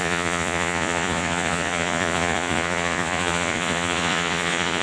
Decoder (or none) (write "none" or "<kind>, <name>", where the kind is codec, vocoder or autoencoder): vocoder, Vocos